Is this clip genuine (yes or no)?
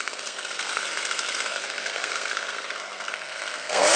no